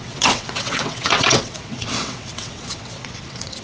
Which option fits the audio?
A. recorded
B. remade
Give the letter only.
B